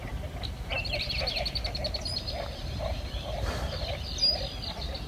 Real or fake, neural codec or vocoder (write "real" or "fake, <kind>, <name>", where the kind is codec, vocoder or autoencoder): real